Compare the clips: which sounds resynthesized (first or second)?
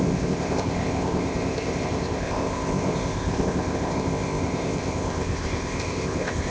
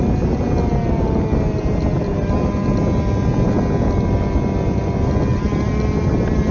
first